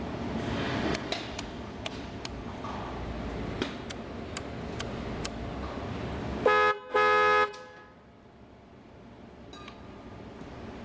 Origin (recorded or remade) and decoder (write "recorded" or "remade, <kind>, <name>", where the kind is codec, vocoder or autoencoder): recorded